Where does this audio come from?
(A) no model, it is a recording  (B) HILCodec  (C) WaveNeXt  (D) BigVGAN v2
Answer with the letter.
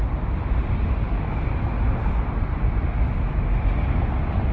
A